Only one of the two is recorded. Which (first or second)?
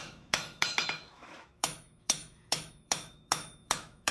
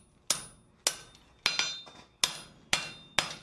second